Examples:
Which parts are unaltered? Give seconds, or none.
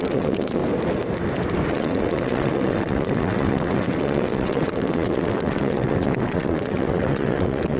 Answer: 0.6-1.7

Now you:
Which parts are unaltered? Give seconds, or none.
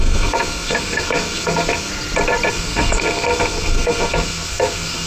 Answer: 1.9-2.5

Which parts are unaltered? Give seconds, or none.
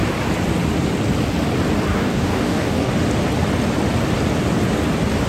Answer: 0.0-1.9; 2.9-5.3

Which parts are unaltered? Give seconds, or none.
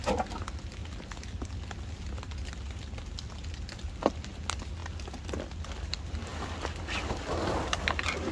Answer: 0.0-8.3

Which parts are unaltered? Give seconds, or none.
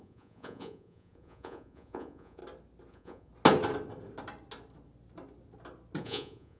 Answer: 2.4-2.9; 3.3-6.0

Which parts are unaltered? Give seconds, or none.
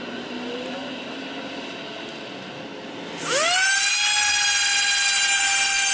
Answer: 0.0-5.9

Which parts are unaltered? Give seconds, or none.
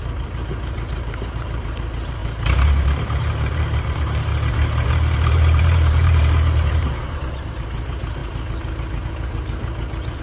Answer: 4.3-4.9